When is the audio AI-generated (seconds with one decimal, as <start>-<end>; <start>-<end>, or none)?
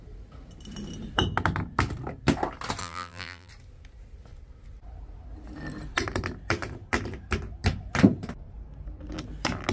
2.8-3.5